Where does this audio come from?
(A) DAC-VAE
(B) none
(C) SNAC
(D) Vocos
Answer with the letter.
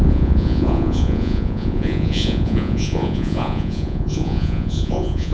D